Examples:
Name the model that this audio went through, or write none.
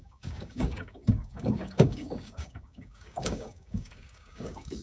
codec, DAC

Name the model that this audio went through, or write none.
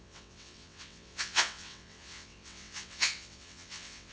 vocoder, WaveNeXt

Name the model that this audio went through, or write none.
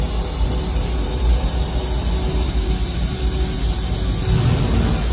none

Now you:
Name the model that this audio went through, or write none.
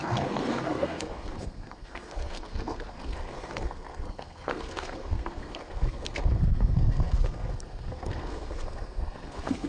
codec, SNAC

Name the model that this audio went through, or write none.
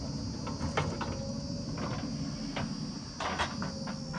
none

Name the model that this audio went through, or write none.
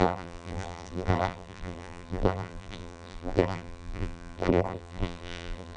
vocoder, BigVGAN v2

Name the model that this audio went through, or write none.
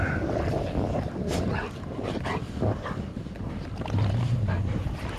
none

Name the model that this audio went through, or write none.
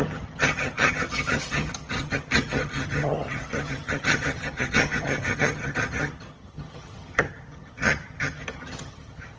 vocoder, HiFi-GAN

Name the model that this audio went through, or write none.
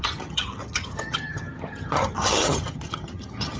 vocoder, HiFi-GAN